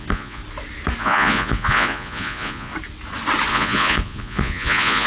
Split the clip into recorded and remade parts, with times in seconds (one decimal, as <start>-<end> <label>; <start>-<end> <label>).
0.0-0.4 remade; 0.4-1.0 recorded; 1.0-2.7 remade; 2.7-3.5 recorded; 3.5-5.1 remade